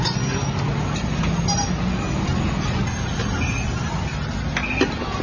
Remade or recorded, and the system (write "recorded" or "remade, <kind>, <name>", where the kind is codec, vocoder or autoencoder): recorded